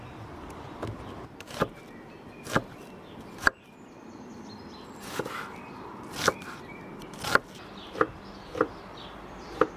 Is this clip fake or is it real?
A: real